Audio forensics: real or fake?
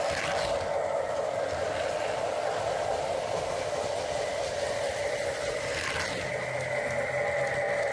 real